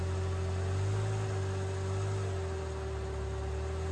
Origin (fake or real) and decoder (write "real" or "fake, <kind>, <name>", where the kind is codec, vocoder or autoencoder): real